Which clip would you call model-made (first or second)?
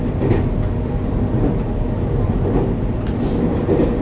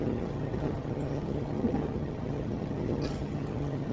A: second